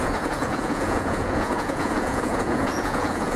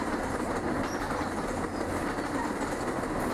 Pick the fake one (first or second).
first